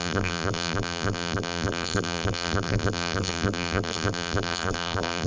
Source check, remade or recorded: remade